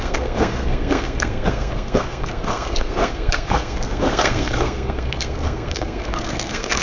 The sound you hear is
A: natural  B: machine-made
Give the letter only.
B